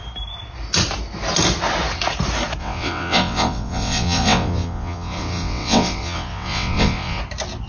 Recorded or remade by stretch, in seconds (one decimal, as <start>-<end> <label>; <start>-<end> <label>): 0.0-2.6 recorded; 2.6-7.2 remade; 7.2-7.7 recorded

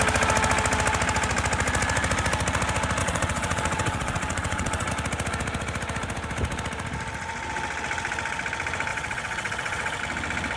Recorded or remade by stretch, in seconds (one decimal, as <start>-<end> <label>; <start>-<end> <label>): 0.0-3.0 recorded; 3.0-4.9 remade; 4.9-8.9 recorded; 8.9-10.0 remade; 10.0-10.6 recorded

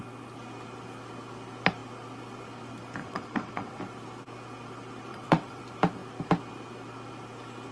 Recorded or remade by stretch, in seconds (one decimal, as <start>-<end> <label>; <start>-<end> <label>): 0.0-3.0 recorded; 3.0-3.8 remade; 3.8-5.1 recorded; 5.1-5.6 remade; 5.6-7.7 recorded